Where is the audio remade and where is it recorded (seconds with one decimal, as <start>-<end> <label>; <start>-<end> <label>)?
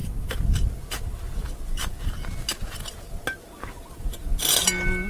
0.0-5.1 recorded